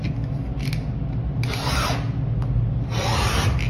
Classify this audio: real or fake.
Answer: real